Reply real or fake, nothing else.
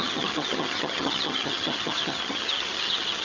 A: fake